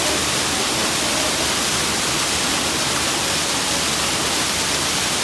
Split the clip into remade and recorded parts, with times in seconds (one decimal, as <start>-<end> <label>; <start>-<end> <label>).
0.0-5.2 recorded